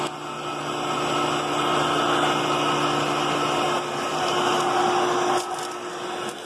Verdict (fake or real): real